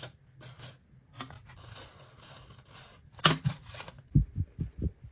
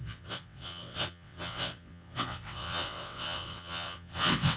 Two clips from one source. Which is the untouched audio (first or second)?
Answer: first